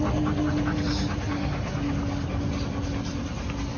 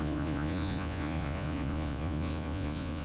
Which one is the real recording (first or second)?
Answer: first